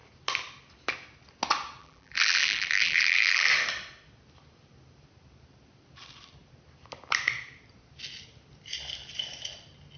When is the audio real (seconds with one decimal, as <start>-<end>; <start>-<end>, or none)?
0.0-1.8; 3.5-10.0